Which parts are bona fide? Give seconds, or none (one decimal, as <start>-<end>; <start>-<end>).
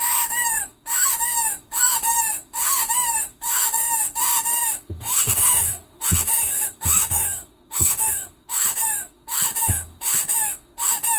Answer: none